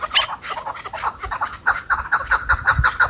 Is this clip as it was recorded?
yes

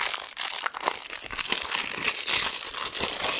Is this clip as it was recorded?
yes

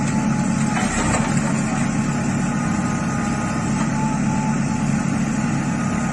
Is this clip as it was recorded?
yes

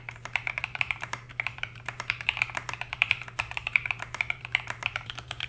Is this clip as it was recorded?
no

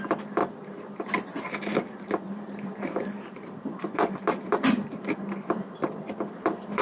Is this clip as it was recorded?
no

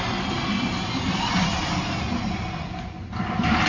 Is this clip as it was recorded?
yes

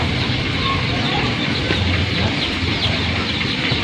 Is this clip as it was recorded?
yes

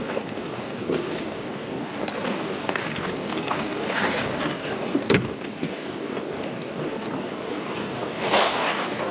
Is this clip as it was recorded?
no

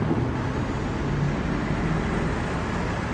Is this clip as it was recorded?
yes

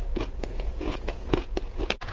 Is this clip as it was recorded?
no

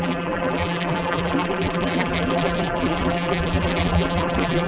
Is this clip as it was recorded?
no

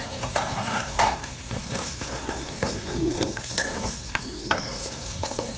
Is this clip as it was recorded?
no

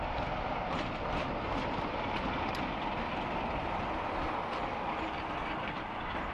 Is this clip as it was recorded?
yes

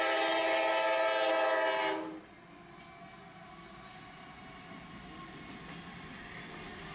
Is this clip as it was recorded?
yes